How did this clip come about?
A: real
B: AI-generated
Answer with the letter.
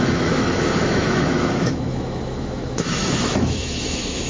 B